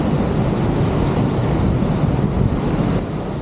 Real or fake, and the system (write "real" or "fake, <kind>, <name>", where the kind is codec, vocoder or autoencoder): real